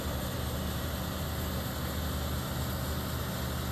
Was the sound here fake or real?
real